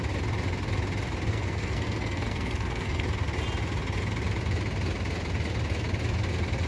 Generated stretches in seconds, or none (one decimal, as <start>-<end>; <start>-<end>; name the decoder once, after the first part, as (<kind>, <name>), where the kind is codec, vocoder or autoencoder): 1.3-3.0 (codec, SNAC)